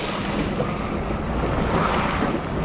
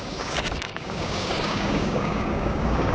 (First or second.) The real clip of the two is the first